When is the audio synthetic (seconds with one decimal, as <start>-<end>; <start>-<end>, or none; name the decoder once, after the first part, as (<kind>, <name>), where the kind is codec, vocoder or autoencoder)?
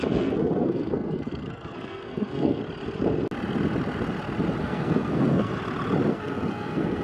0.0-2.6 (codec, SNAC); 4.6-5.5; 6.1-7.0